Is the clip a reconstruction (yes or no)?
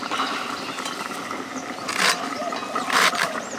no